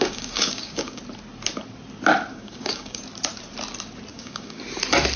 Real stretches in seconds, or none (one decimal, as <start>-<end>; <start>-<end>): 1.0-2.3; 3.0-4.1; 4.6-5.2